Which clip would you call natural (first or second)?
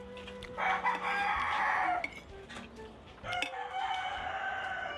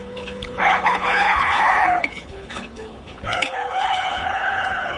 first